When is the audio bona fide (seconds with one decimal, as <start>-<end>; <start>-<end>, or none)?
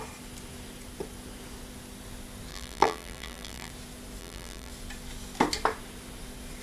0.0-2.5; 3.7-4.2; 4.7-6.6